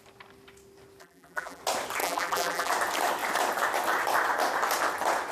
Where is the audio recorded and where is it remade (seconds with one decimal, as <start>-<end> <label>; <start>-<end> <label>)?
0.0-1.0 recorded; 1.0-1.6 remade; 1.6-2.0 recorded; 2.0-2.7 remade; 2.7-5.3 recorded